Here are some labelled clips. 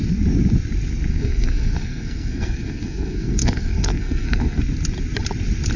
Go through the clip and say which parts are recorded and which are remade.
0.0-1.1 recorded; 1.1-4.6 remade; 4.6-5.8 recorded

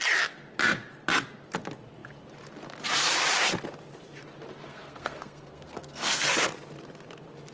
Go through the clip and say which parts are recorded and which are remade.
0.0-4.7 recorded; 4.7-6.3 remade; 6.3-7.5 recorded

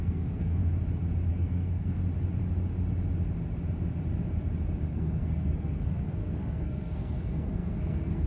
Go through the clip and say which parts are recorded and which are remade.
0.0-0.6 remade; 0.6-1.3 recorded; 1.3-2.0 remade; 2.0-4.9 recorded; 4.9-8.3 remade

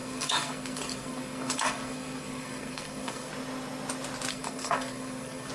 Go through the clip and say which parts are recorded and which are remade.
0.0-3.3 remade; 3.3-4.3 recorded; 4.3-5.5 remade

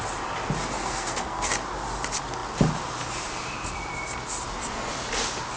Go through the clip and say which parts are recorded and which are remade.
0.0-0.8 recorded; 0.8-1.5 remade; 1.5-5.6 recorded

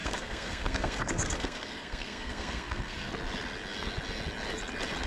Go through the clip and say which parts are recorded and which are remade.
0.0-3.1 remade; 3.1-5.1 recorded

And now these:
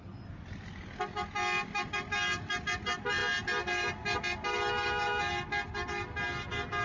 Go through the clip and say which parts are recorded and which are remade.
0.0-6.8 recorded